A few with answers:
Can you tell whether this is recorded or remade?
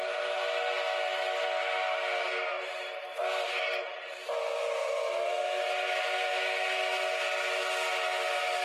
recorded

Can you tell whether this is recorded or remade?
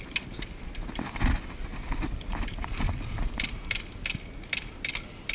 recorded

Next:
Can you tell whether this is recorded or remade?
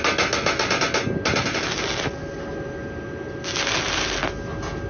recorded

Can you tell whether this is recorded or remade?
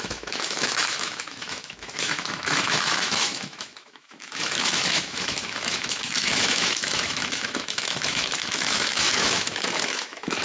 remade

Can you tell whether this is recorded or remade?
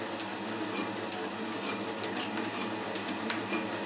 recorded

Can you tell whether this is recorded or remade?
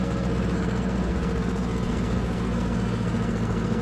remade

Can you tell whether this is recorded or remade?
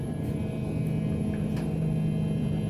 recorded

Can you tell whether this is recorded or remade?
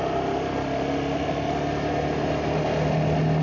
recorded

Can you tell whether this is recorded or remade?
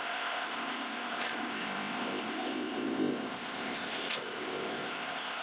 remade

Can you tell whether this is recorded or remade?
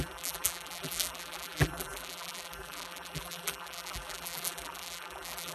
remade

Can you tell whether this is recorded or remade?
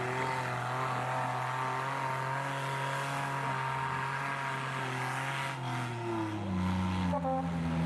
recorded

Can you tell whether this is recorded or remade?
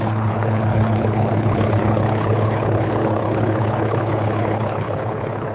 remade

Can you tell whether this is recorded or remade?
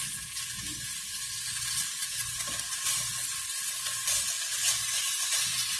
recorded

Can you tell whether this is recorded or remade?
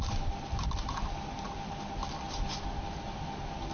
recorded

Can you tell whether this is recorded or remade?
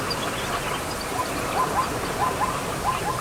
recorded